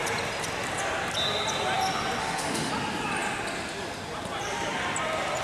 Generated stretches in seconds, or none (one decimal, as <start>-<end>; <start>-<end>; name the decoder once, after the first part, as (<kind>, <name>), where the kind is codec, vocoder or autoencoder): 2.2-2.7 (autoencoder, DAC-VAE)

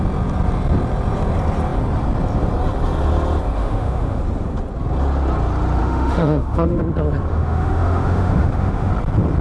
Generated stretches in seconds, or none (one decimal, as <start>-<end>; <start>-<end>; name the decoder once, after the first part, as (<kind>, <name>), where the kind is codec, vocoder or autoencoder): 3.6-4.2 (autoencoder, DAC-VAE); 5.8-6.8; 7.3-8.9

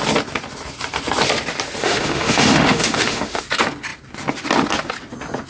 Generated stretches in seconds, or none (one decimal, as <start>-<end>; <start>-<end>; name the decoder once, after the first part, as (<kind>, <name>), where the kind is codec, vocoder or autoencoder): 1.8-3.4 (autoencoder, DAC-VAE)

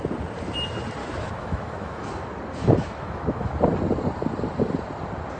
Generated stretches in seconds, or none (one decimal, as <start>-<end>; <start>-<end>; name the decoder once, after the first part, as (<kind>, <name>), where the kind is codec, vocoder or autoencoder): 1.0-2.1 (autoencoder, DAC-VAE); 2.6-3.5

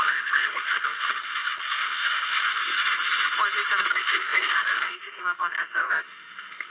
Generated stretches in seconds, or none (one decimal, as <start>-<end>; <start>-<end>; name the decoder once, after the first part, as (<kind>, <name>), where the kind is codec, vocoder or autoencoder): 0.0-2.6 (autoencoder, DAC-VAE); 3.9-6.7